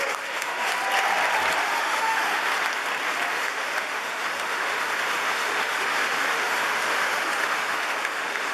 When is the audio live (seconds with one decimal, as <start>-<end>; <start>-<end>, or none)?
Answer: 0.7-1.6; 2.5-3.3